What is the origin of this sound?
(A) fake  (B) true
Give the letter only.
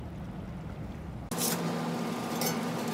B